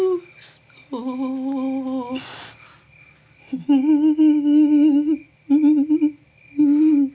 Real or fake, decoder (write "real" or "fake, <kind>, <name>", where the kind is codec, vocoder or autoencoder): real